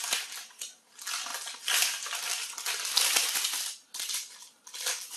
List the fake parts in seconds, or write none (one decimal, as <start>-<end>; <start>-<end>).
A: none